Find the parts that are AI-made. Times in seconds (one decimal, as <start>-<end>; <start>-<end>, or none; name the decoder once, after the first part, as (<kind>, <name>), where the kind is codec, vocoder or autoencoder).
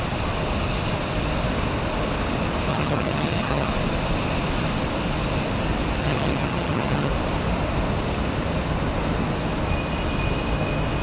2.7-3.7 (vocoder, HiFi-GAN); 6.0-7.1